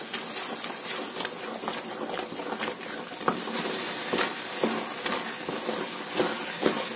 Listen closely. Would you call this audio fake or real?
real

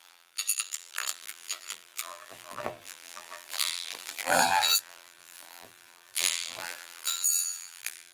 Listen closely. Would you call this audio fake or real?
fake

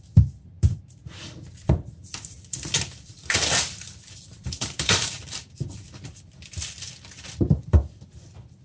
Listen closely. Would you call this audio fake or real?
fake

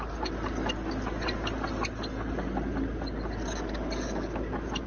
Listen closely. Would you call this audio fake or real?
real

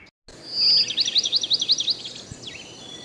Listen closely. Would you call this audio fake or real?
real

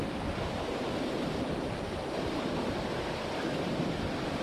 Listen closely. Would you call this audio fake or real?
fake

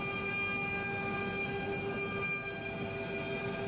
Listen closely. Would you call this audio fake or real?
real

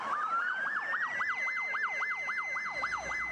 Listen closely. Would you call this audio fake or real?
fake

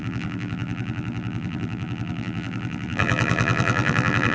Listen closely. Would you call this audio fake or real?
fake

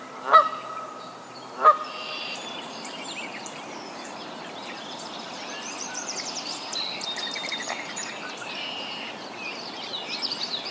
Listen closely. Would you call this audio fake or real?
fake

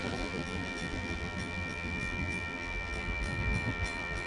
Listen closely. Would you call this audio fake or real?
fake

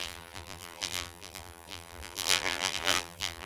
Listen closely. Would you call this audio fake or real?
fake